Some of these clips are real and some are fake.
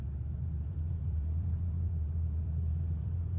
fake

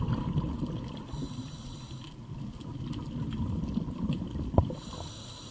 real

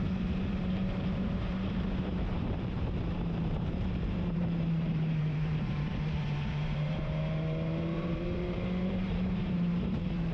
fake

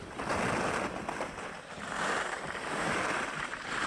real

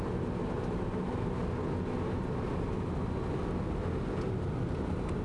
real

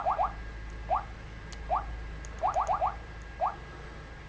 real